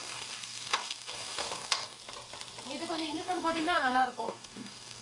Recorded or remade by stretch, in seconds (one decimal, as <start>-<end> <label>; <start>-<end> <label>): 0.0-2.0 remade; 2.0-2.9 recorded; 2.9-5.0 remade